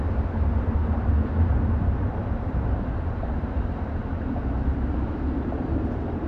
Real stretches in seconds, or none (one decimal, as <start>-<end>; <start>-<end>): 0.0-2.2

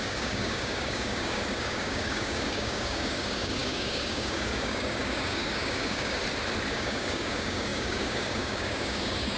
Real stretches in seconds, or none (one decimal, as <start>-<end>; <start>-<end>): 6.2-6.7

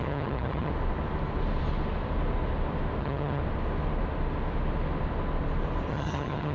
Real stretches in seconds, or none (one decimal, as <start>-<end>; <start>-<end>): 0.7-3.0; 3.4-5.9

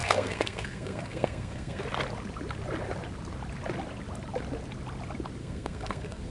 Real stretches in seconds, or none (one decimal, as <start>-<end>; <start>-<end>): 1.8-5.4

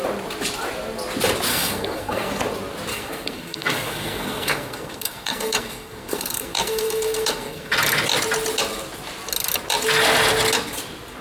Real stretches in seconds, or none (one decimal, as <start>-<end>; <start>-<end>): 0.0-1.5; 2.4-2.9; 7.7-11.2

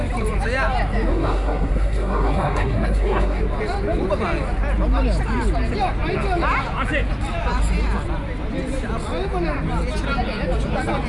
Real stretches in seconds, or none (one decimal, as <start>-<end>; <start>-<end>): 0.0-1.1; 3.4-11.1